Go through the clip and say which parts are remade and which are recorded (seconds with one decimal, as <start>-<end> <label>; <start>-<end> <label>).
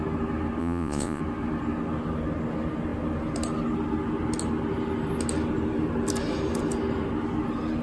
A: 0.0-0.6 recorded; 0.6-1.2 remade; 1.2-7.8 recorded